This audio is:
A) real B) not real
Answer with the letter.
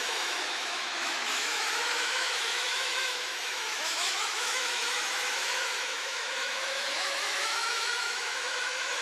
B